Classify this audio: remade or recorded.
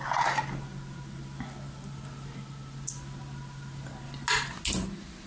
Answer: recorded